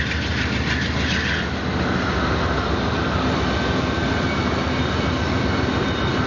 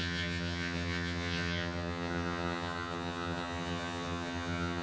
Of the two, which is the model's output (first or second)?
second